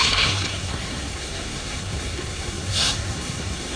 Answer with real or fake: fake